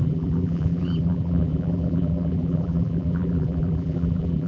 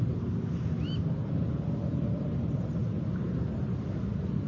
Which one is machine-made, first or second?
first